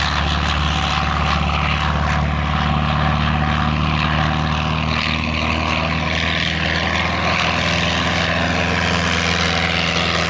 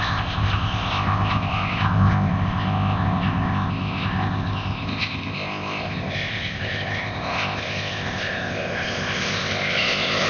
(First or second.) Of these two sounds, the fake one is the second